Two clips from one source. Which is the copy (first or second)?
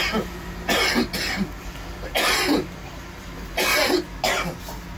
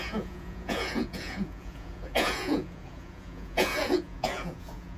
second